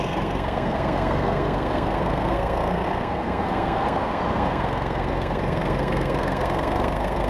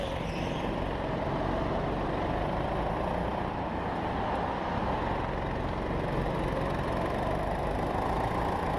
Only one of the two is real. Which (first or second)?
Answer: second